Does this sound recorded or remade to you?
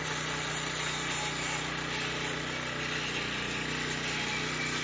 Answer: recorded